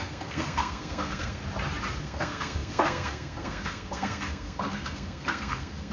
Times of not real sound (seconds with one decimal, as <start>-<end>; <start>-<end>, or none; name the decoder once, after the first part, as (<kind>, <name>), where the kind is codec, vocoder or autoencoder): 0.0-1.4 (codec, SNAC); 2.0-5.9